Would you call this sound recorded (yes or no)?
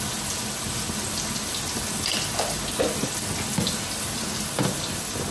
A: yes